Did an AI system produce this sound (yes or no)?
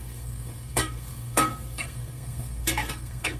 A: yes